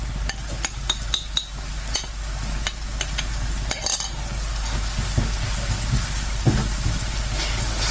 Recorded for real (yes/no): yes